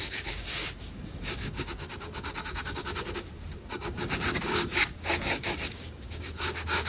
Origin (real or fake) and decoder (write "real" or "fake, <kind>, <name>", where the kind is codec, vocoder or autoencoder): fake, codec, DAC